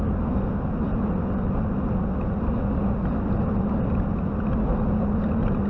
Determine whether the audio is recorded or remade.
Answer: recorded